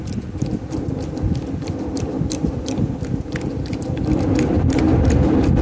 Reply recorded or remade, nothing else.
recorded